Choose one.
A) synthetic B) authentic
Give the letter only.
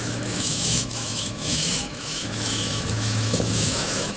A